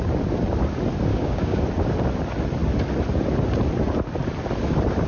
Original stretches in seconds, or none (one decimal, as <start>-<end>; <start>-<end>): 0.0-1.1; 1.6-5.1